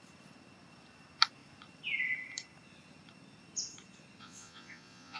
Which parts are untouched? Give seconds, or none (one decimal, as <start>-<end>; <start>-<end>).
0.0-4.2

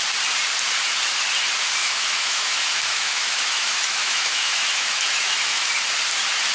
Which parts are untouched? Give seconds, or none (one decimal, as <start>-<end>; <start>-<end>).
0.0-1.8; 5.7-6.5

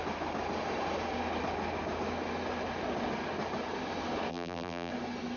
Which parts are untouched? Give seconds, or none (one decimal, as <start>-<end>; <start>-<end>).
0.0-4.3; 4.9-5.4

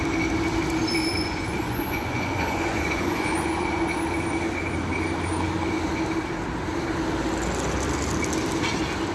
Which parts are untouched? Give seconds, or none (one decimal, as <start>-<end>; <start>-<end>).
0.0-1.1; 4.0-9.1

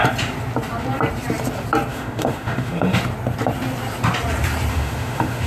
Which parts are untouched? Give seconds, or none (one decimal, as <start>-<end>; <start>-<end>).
0.0-1.9; 3.0-4.7

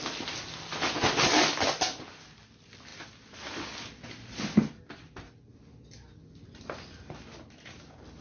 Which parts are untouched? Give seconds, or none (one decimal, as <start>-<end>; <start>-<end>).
0.0-8.2